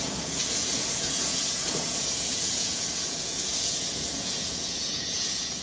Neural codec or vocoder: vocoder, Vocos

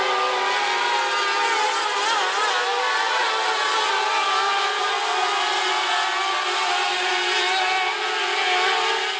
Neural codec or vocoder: none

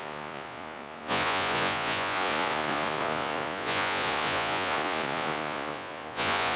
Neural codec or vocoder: vocoder, Vocos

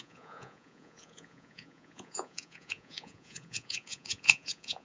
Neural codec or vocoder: vocoder, Vocos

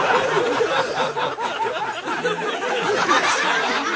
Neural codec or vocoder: none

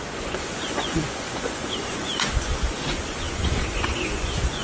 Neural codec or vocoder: vocoder, Vocos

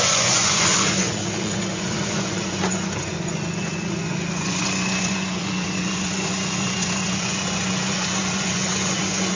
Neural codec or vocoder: vocoder, Vocos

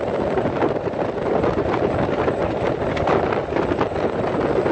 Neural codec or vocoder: none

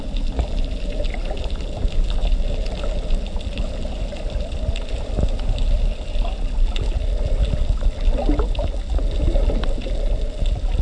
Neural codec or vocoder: none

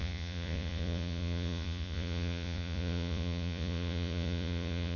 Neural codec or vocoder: vocoder, Vocos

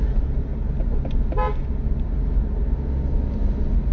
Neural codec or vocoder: none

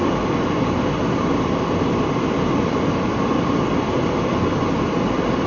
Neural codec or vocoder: none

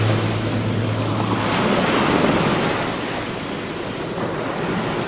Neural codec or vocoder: none